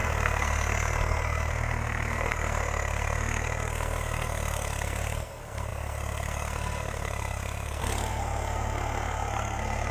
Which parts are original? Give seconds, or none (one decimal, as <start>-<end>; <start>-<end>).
none